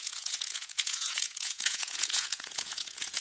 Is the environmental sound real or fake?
fake